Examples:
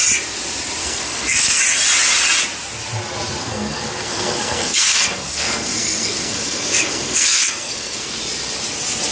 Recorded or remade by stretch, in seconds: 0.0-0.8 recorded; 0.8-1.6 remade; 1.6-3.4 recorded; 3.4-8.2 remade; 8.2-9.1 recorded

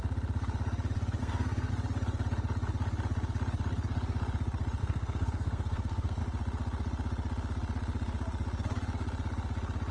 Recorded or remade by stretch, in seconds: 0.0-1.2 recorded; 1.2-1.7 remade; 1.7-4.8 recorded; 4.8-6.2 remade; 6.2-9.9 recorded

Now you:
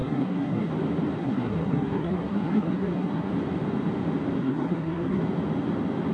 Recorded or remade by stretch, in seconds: 0.0-0.7 remade; 0.7-1.2 recorded; 1.2-3.3 remade; 3.3-4.4 recorded; 4.4-5.2 remade; 5.2-6.1 recorded

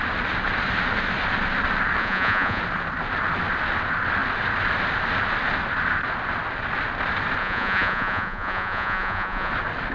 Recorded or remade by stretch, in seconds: 0.0-2.0 recorded; 2.0-2.6 remade; 2.6-7.4 recorded; 7.4-9.5 remade; 9.5-9.9 recorded

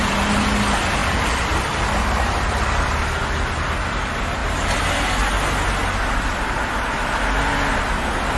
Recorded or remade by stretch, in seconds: 0.0-8.4 recorded